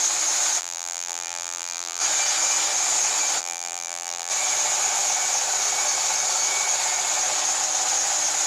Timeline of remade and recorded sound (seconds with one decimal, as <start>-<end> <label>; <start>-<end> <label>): 0.0-0.6 recorded; 0.6-2.0 remade; 2.0-3.4 recorded; 3.4-4.3 remade; 4.3-8.5 recorded